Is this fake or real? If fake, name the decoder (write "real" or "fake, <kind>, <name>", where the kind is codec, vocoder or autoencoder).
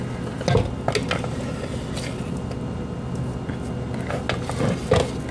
real